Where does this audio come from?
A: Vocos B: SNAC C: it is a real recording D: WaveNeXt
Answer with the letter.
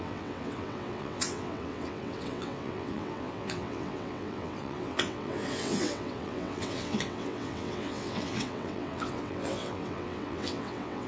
D